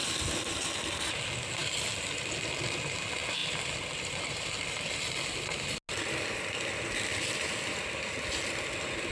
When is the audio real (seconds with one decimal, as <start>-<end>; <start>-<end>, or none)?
0.6-1.6; 2.2-3.4; 5.6-7.1; 8.3-9.1

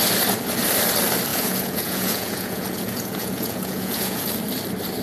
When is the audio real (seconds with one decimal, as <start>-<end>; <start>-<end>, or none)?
0.0-1.3; 4.3-5.0

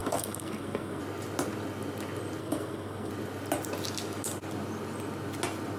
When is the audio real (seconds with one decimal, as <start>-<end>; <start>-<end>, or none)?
1.0-2.4; 3.1-5.8

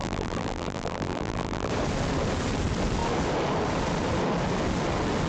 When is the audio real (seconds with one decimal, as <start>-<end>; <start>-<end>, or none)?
1.7-5.3